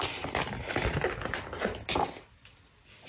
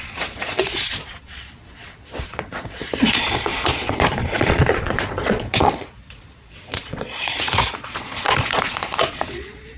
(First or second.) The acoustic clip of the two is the first